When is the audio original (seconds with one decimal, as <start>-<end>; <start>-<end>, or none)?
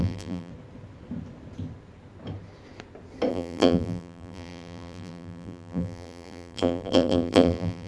0.5-3.3